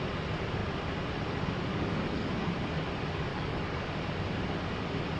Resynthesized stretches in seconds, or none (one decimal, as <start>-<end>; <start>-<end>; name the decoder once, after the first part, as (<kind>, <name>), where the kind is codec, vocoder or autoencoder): 1.7-2.5 (codec, DAC); 3.3-3.9

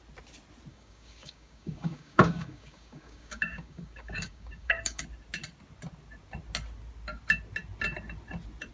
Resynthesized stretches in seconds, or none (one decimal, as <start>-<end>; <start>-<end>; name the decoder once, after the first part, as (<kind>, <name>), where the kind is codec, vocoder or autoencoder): 0.7-5.0 (codec, DAC)

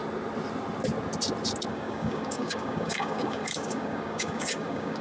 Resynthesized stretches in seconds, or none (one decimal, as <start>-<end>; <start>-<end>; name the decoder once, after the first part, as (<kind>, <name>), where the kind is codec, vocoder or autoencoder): 1.7-5.0 (codec, DAC)

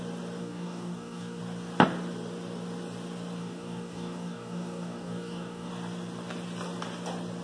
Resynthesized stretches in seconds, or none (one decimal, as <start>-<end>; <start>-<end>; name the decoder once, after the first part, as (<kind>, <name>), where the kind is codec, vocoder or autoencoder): 0.4-1.4 (codec, DAC); 3.4-5.7

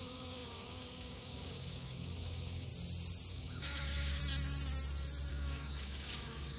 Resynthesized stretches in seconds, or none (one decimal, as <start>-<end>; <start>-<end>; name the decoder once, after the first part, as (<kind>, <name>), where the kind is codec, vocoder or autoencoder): 0.0-2.7 (codec, DAC); 3.3-4.2; 5.3-6.6